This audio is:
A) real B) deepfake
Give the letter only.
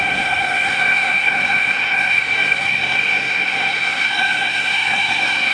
B